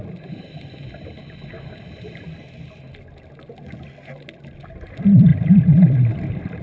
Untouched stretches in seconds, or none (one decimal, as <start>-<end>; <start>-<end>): 0.0-6.6